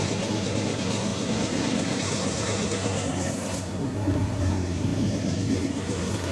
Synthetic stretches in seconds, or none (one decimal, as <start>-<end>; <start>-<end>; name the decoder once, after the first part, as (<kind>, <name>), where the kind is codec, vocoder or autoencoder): 0.0-6.3 (codec, SNAC)